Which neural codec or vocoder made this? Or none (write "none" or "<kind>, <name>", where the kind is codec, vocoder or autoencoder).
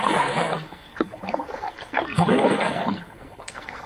codec, SNAC